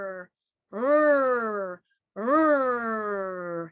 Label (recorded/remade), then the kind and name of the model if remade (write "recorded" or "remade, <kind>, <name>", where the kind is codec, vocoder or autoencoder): remade, codec, DAC